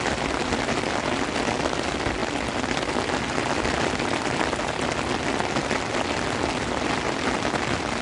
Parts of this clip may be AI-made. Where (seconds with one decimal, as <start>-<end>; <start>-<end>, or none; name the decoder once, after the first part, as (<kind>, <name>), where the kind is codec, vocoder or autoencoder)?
none